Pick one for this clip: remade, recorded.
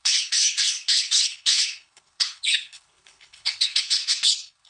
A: remade